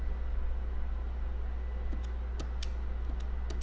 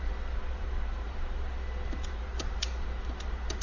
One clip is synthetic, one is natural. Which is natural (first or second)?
first